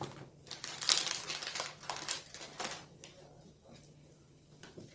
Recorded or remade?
recorded